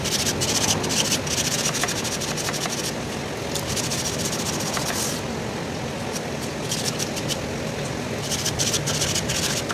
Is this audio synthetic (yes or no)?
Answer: no